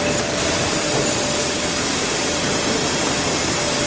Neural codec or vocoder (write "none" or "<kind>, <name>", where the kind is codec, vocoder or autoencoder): none